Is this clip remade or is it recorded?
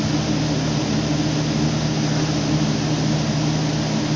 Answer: recorded